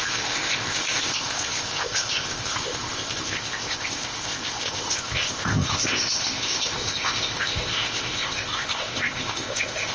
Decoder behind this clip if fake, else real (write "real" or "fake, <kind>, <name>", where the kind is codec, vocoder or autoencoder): fake, codec, ZipCodec